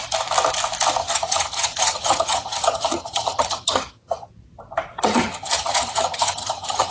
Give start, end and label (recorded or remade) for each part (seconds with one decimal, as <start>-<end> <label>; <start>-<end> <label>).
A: 0.0-1.0 recorded; 1.0-4.3 remade; 4.3-4.9 recorded; 4.9-6.9 remade